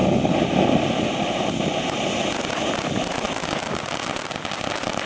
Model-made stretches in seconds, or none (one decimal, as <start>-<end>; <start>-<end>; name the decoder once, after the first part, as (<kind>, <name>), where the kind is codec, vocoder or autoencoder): none